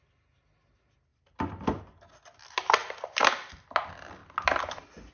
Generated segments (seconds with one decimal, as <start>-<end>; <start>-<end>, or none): 1.1-1.8; 2.8-3.5